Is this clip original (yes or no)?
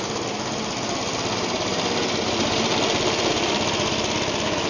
yes